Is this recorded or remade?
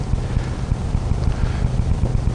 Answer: recorded